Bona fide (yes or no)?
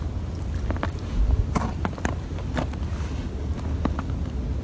yes